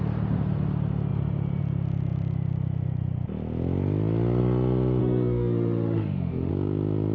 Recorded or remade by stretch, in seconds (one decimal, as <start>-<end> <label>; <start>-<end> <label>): 0.0-5.0 recorded; 5.0-6.5 remade; 6.5-7.1 recorded